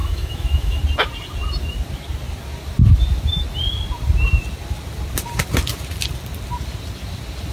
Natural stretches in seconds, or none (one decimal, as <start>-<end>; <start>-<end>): 0.8-7.5